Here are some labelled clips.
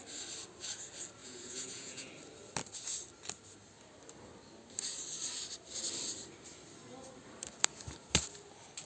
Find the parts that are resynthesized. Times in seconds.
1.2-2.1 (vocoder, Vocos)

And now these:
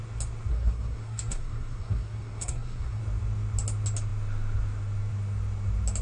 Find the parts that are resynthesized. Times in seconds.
0.5-3.0 (codec, SNAC)

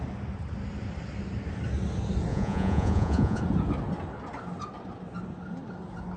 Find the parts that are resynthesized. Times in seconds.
2.3-3.4 (vocoder, Vocos)

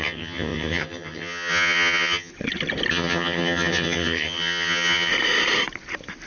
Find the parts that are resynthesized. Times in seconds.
0.0-2.3 (vocoder, HiFi-GAN); 2.9-5.1

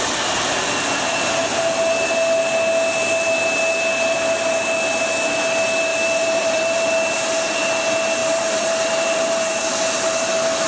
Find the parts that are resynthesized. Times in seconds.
5.9-6.9 (vocoder, BigVGAN v2); 8.2-9.6

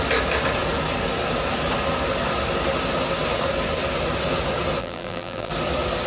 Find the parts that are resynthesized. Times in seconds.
4.8-5.5 (vocoder, BigVGAN v2)